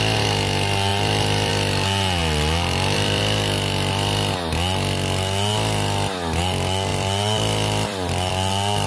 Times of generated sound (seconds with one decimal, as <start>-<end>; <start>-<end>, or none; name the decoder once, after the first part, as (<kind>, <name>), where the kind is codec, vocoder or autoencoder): 0.9-1.5 (vocoder, BigVGAN v2); 2.2-3.2; 6.9-8.3